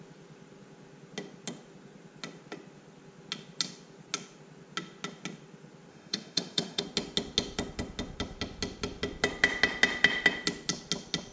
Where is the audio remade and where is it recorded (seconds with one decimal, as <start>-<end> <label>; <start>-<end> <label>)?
0.0-5.9 recorded; 5.9-6.8 remade; 6.8-11.3 recorded